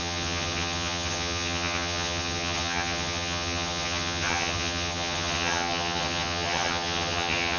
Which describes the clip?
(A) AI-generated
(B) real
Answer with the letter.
A